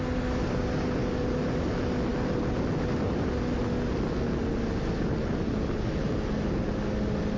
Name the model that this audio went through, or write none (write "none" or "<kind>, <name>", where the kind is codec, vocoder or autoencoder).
none